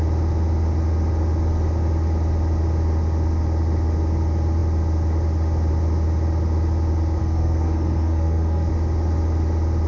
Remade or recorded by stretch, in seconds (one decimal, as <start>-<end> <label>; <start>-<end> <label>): 0.0-7.2 recorded; 7.2-8.7 remade; 8.7-9.9 recorded